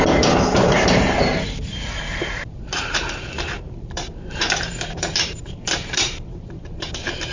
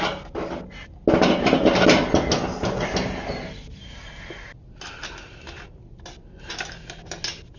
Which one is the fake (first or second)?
first